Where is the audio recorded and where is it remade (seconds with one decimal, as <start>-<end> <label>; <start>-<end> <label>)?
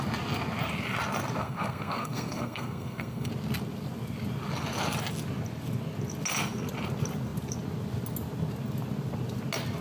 0.0-1.4 recorded; 1.4-3.3 remade; 3.3-9.8 recorded